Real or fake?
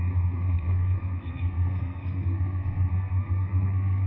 fake